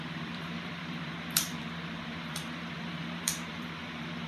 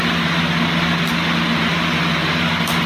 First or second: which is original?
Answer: second